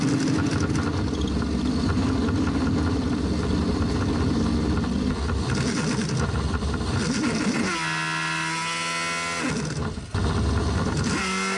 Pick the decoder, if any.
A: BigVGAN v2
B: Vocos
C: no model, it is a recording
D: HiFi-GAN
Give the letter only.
C